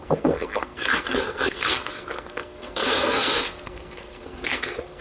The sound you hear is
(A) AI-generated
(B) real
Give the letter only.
A